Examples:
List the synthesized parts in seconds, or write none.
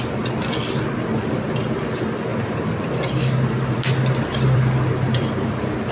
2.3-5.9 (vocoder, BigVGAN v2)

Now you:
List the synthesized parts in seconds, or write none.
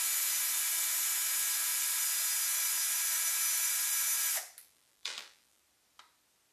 4.6-5.6 (vocoder, BigVGAN v2)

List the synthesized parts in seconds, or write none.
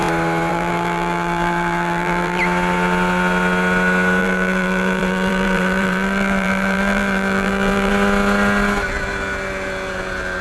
0.5-2.4 (vocoder, BigVGAN v2); 4.2-7.9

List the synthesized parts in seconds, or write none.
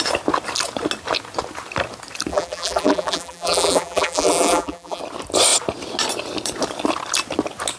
2.3-5.0 (vocoder, BigVGAN v2)